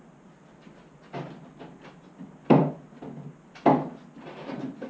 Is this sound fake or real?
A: real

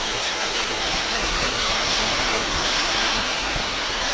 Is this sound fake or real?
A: fake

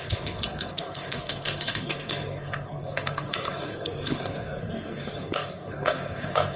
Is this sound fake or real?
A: fake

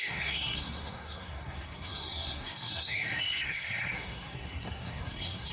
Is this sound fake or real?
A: fake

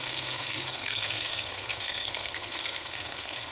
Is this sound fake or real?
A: fake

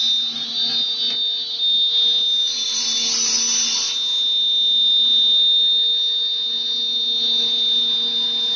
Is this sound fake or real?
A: real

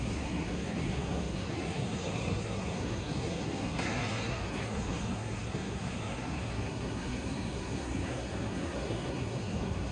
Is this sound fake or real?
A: fake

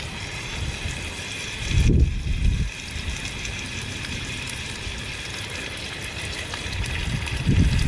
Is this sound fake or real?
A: real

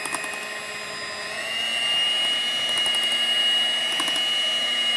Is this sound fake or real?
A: real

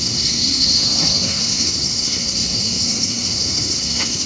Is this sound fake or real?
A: fake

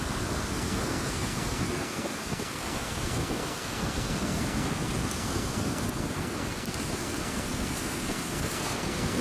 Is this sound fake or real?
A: fake